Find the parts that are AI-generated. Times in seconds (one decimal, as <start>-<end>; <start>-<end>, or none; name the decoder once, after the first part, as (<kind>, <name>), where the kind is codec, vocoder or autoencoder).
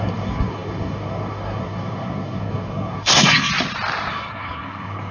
0.0-3.5 (codec, SNAC); 4.1-5.1